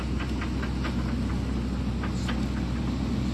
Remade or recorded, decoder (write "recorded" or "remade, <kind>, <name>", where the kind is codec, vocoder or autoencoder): recorded